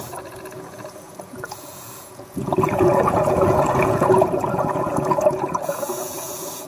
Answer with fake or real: fake